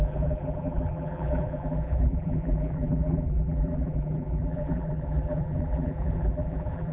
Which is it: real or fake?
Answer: fake